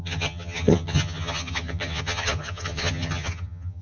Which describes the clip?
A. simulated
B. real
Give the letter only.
A